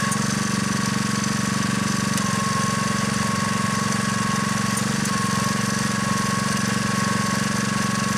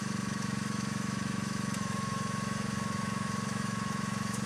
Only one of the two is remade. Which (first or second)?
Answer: second